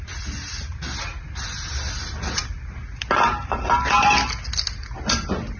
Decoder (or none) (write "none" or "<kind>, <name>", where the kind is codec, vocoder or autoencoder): none